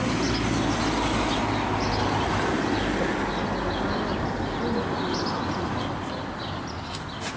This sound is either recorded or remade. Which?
recorded